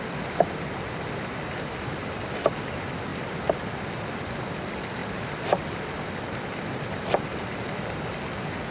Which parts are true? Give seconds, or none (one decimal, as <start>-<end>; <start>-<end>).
0.0-7.3; 8.0-8.7